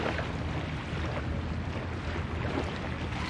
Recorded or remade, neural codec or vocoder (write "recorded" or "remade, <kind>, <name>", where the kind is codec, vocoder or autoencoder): recorded